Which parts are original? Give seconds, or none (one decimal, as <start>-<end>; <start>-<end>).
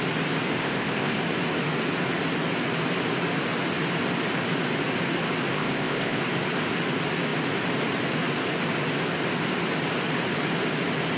0.0-0.6; 1.2-5.5; 6.2-11.2